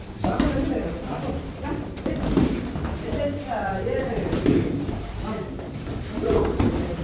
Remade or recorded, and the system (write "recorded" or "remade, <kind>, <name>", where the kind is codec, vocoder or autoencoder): remade, vocoder, BigVGAN v2